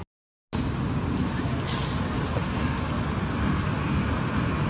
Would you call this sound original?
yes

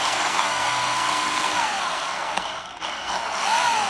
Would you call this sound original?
no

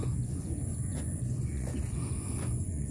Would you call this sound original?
no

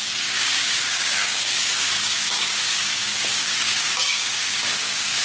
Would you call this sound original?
no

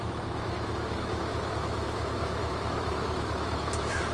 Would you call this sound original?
no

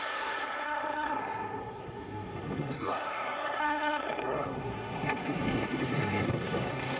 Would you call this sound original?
no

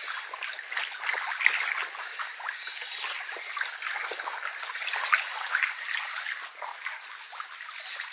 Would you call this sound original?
yes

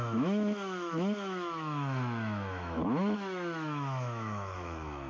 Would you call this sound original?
no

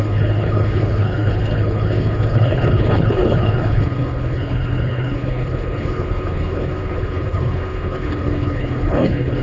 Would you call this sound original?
no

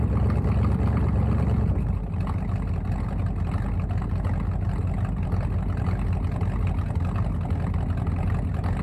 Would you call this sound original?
yes